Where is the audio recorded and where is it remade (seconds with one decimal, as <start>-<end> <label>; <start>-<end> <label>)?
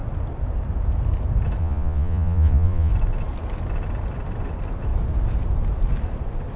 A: 0.0-1.6 recorded; 1.6-2.9 remade; 2.9-6.6 recorded